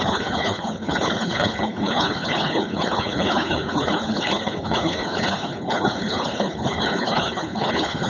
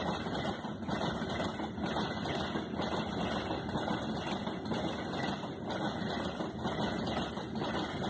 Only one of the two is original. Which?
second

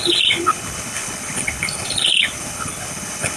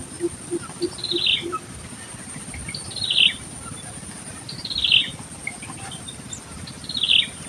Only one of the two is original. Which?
second